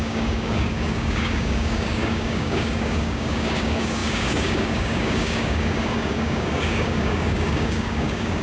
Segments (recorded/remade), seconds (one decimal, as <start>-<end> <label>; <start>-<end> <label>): 0.0-8.4 remade